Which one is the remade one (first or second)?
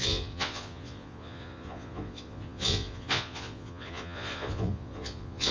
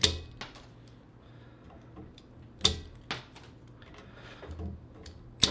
first